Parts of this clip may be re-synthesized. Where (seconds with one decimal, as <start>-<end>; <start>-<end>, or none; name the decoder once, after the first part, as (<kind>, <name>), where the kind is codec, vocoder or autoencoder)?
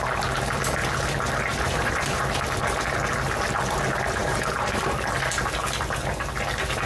1.5-2.2 (vocoder, BigVGAN v2); 4.2-4.8